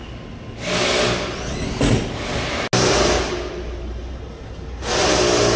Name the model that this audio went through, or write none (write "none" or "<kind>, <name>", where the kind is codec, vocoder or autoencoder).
none